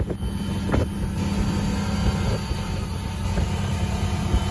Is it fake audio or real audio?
real